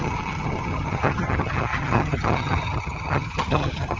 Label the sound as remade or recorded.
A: remade